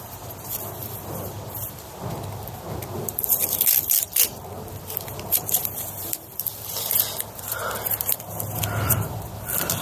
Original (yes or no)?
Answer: no